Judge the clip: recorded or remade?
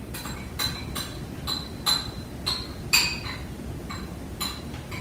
recorded